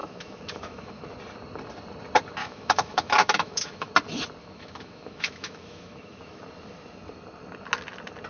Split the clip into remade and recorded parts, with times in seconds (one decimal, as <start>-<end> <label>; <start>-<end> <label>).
0.0-1.0 remade; 1.0-2.4 recorded; 2.4-3.9 remade; 3.9-4.4 recorded; 4.4-6.4 remade; 6.4-8.3 recorded